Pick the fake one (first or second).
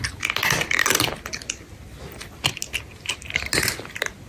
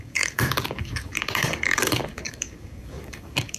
second